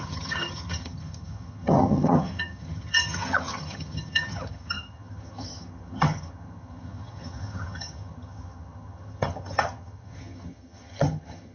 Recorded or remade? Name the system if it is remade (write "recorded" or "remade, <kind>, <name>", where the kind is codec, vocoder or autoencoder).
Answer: remade, vocoder, HiFi-GAN